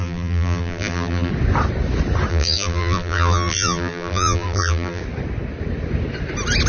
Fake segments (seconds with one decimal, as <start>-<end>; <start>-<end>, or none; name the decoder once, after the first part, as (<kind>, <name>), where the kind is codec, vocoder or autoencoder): 0.0-1.3 (vocoder, BigVGAN v2); 2.3-5.0